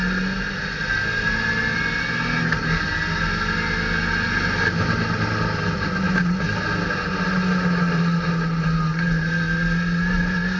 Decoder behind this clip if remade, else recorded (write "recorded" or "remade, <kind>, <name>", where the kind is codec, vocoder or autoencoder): recorded